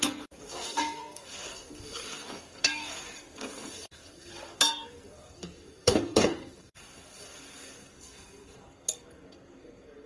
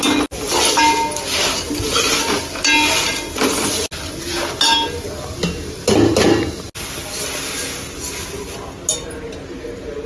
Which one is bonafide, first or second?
second